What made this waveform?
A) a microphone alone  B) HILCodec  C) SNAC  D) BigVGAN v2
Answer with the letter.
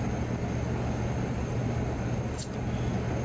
A